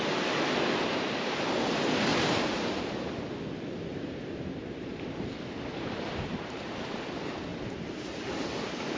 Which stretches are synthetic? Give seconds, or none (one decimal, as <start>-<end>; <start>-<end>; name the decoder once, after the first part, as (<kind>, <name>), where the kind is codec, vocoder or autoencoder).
2.1-2.8 (vocoder, BigVGAN v2); 3.9-7.0; 7.5-8.5